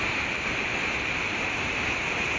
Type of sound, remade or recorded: recorded